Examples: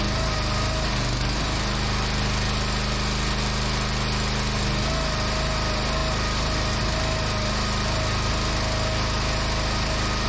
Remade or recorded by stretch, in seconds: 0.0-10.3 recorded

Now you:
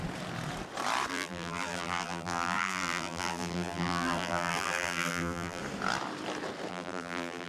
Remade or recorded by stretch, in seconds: 0.0-1.1 recorded; 1.1-5.6 remade; 5.6-6.7 recorded; 6.7-7.5 remade

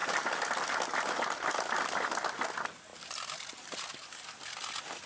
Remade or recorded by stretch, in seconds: 0.0-5.1 recorded

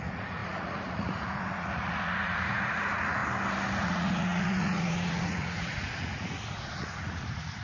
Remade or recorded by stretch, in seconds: 0.0-3.2 remade; 3.2-3.8 recorded; 3.8-7.6 remade